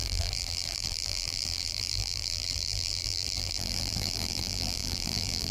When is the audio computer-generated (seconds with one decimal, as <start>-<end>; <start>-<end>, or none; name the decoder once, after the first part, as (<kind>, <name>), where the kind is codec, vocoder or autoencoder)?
0.0-5.5 (vocoder, BigVGAN v2)